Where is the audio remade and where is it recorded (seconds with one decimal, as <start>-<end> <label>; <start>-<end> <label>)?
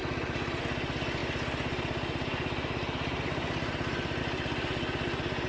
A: 0.0-0.6 remade; 0.6-1.2 recorded; 1.2-4.2 remade; 4.2-5.5 recorded